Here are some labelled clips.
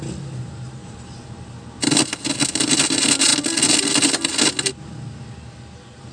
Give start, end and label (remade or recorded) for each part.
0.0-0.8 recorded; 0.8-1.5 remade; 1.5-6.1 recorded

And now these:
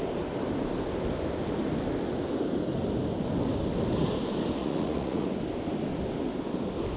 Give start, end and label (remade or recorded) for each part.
0.0-4.6 recorded; 4.6-5.3 remade; 5.3-7.0 recorded

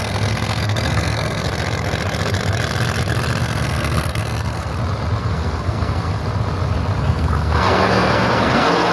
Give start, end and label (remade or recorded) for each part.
0.0-1.5 remade; 1.5-3.4 recorded; 3.4-4.7 remade; 4.7-5.2 recorded; 5.2-6.2 remade; 6.2-7.0 recorded; 7.0-8.9 remade